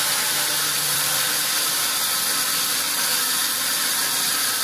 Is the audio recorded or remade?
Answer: recorded